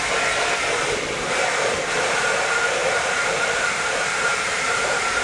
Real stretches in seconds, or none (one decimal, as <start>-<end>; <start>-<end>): 0.0-2.8